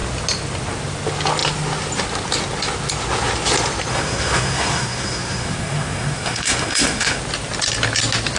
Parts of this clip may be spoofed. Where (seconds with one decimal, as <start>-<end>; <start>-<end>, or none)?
3.9-7.2